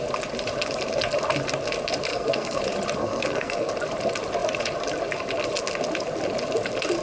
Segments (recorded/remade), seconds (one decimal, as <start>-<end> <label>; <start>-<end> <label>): 0.0-2.1 recorded; 2.1-2.6 remade; 2.6-3.0 recorded; 3.0-3.7 remade; 3.7-7.0 recorded